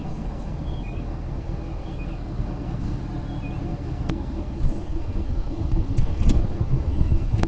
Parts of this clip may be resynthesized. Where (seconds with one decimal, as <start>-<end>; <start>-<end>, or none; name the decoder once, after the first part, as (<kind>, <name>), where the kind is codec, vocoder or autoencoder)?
0.0-3.0 (codec, SNAC); 3.6-7.5